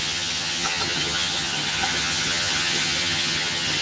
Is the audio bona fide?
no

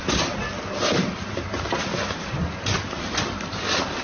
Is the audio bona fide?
yes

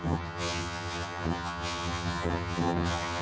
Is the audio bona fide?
no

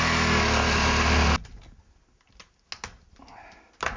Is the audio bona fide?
yes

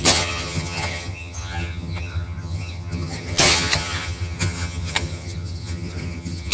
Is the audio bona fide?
no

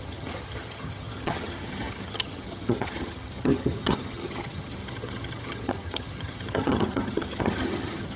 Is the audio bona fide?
no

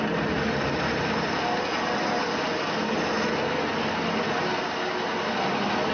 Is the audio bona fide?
yes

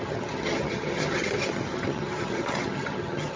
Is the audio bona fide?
no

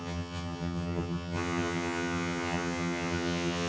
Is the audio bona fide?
no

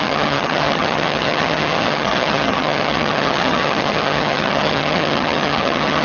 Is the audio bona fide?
no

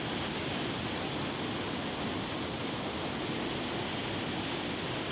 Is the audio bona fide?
yes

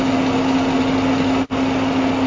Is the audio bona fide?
yes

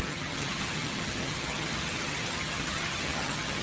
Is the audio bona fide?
no